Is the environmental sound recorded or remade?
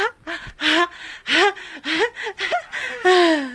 recorded